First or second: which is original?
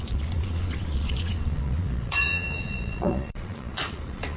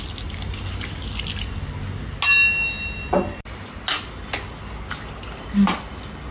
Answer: second